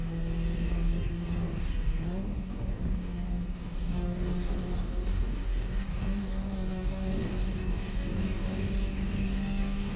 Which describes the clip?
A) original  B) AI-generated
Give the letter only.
B